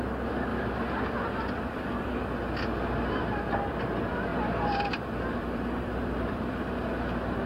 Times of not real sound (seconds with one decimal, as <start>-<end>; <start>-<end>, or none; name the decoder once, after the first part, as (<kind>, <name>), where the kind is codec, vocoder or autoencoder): 0.5-2.1 (vocoder, BigVGAN v2); 4.3-6.7